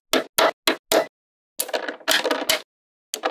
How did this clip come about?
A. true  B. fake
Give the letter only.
A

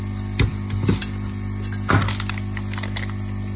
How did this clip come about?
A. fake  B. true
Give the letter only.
B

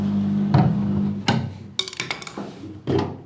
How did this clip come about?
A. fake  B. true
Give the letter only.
B